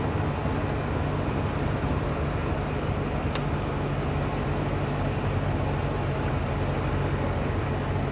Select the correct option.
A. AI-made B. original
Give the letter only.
B